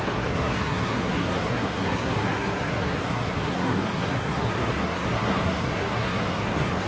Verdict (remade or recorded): remade